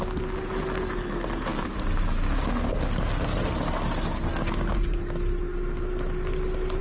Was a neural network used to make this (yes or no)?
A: no